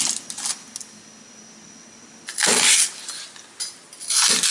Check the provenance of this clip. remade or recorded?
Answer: recorded